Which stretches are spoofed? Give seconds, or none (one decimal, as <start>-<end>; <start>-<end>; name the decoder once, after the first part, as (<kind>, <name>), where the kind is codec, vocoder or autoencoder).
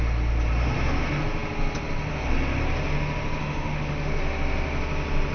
3.4-4.2 (autoencoder, DAC-VAE)